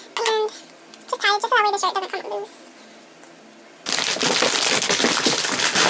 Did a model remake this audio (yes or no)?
no